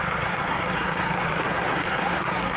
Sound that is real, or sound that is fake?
fake